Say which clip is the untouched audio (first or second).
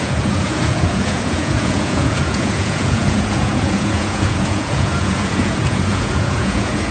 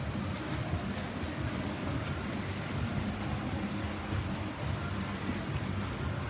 second